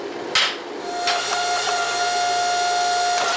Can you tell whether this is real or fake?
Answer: real